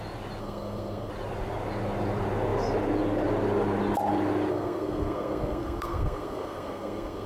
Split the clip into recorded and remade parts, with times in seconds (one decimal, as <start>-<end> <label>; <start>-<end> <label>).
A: 0.0-0.4 recorded; 0.4-1.1 remade; 1.1-4.5 recorded; 4.5-7.3 remade